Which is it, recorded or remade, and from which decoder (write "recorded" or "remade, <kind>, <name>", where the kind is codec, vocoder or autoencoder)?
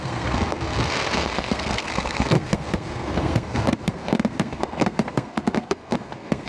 remade, codec, SNAC